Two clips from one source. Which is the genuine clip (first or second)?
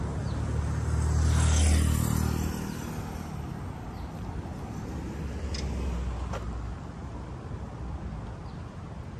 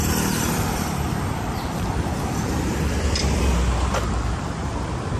first